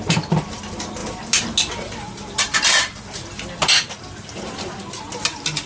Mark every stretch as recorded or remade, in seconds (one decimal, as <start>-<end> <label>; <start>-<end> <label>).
0.0-5.7 recorded